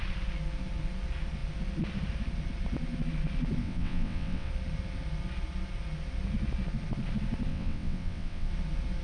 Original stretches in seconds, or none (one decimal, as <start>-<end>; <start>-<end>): 0.0-3.6; 4.5-7.5; 8.5-9.0